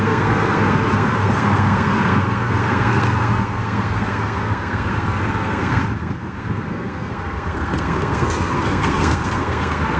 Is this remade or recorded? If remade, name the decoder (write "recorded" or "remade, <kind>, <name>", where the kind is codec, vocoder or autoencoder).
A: remade, codec, SNAC